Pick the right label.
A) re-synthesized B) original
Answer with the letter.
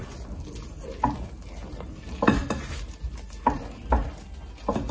B